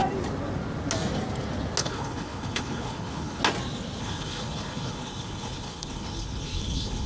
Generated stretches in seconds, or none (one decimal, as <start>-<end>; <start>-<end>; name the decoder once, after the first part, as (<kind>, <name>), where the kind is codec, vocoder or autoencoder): 1.8-3.4 (codec, HILCodec); 4.0-7.1